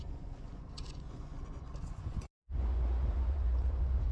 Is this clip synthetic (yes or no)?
yes